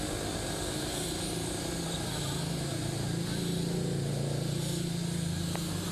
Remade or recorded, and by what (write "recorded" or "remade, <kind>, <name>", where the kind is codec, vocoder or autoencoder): recorded